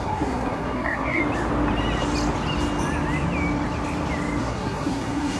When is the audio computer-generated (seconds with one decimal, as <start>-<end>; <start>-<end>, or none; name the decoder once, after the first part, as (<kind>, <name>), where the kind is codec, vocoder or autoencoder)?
0.0-1.2 (codec, SNAC); 4.4-5.4